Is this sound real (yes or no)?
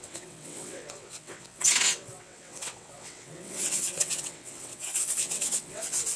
no